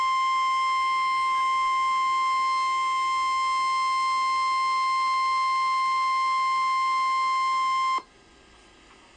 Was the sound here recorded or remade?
recorded